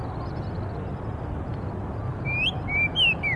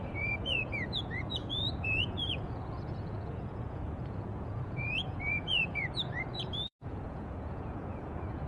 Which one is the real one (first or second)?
first